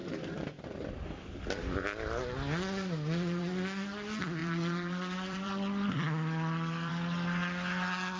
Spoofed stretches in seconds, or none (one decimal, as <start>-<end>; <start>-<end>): 0.0-2.2; 4.4-6.9